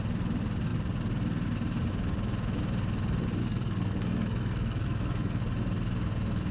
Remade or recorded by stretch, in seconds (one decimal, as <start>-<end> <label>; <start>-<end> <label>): 0.0-3.4 recorded; 3.4-5.4 remade; 5.4-6.5 recorded